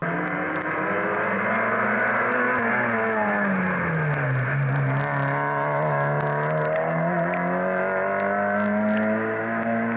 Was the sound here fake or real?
real